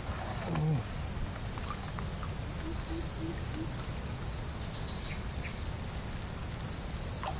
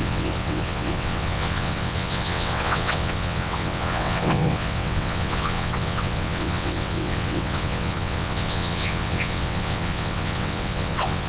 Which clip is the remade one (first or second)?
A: second